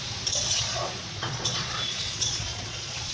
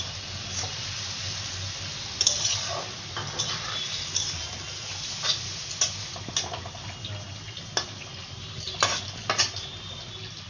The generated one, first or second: first